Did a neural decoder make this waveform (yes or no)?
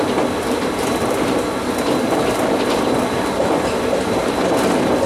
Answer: yes